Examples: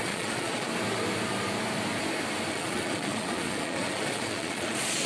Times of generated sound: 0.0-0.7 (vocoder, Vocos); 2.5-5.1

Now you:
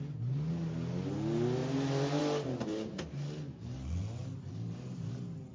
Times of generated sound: none